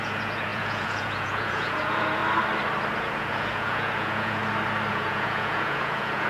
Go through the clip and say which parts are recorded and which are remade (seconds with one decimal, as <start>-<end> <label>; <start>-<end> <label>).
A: 0.0-2.2 remade; 2.2-3.0 recorded; 3.0-4.4 remade; 4.4-4.9 recorded; 4.9-6.3 remade